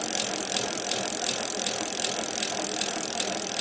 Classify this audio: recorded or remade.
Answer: recorded